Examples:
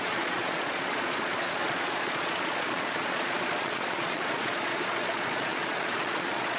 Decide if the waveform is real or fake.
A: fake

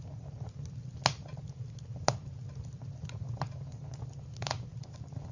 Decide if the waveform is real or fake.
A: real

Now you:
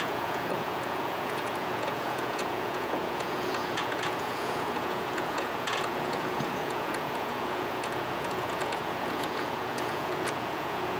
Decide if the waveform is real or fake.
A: fake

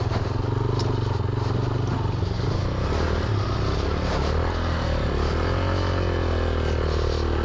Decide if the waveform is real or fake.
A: real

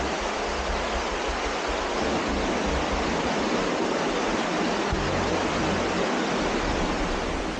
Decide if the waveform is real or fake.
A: real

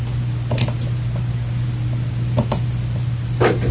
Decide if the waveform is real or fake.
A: real